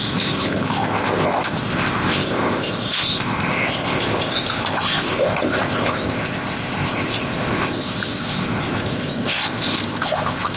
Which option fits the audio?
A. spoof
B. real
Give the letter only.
A